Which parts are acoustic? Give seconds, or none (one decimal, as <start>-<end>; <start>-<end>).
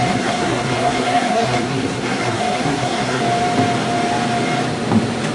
3.2-5.3